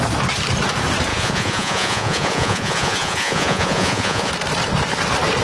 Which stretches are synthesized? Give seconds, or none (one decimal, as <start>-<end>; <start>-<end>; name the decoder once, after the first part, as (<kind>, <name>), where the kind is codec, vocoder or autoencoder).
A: 1.1-4.3 (vocoder, Vocos)

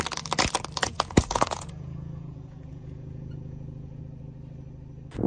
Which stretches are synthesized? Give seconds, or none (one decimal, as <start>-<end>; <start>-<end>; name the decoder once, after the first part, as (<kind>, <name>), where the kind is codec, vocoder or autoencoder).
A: 0.8-4.0 (vocoder, Vocos)

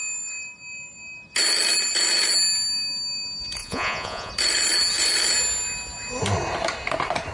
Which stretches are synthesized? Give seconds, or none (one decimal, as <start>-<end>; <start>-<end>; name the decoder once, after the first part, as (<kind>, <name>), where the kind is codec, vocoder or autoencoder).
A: 3.6-4.3 (vocoder, Vocos)